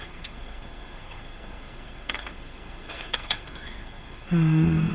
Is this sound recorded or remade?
remade